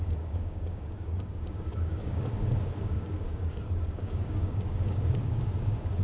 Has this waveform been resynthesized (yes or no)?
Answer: yes